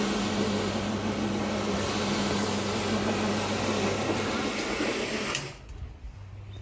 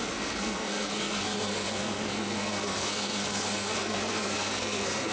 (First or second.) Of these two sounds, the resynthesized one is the second